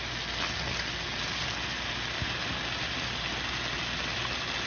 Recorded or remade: recorded